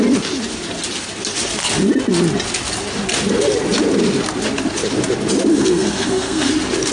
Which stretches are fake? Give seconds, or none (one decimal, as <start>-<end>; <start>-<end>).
5.5-6.5